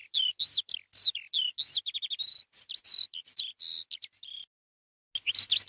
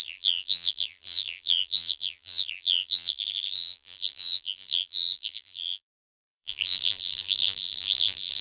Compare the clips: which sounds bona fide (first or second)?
first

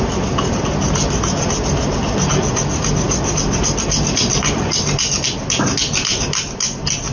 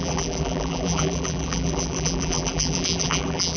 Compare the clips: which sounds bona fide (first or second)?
first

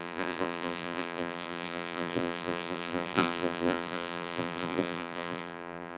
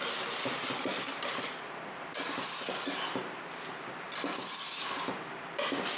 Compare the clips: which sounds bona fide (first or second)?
second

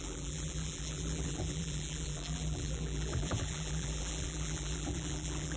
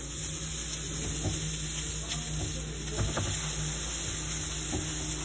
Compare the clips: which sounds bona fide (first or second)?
second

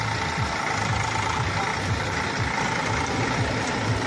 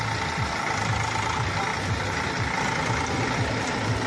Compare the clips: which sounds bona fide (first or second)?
second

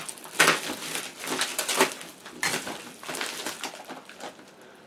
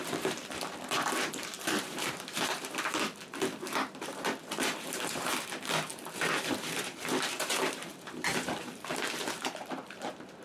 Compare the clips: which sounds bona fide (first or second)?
first